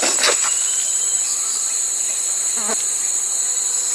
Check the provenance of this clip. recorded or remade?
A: recorded